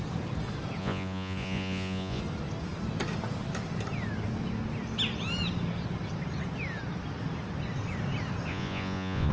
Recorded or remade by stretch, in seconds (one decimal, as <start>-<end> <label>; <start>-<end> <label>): 0.0-0.8 recorded; 0.8-2.2 remade; 2.2-8.5 recorded; 8.5-9.3 remade